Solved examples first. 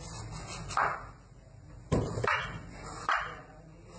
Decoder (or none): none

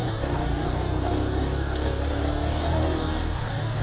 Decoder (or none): codec, DAC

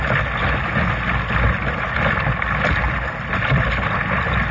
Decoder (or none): none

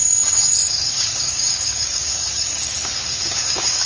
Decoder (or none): codec, DAC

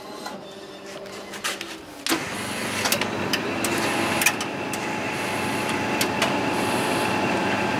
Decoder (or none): none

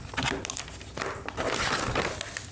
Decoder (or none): none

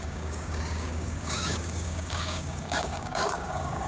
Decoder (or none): codec, DAC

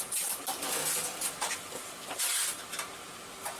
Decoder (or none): none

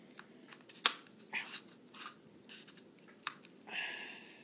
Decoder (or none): none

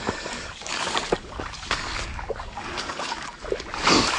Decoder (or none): codec, DAC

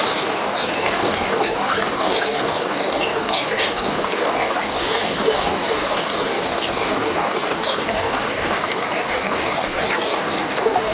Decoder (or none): codec, DAC